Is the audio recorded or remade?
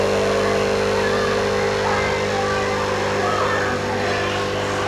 recorded